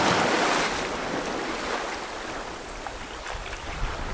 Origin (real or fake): real